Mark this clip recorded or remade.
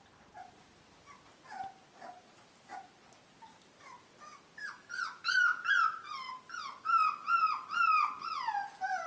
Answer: recorded